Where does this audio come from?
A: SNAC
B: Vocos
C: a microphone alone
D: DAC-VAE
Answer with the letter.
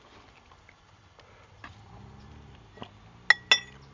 C